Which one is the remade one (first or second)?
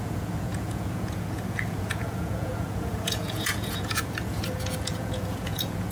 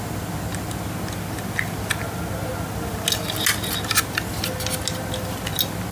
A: first